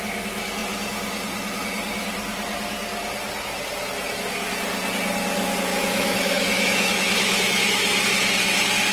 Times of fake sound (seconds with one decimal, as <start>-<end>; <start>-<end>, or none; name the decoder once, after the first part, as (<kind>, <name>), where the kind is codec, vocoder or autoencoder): 5.7-8.0 (autoencoder, DAC-VAE)